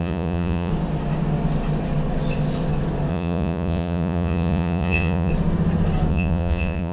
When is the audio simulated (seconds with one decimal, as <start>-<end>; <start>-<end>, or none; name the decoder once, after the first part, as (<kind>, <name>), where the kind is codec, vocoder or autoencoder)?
0.0-0.7 (vocoder, Vocos); 3.1-5.3; 6.1-6.9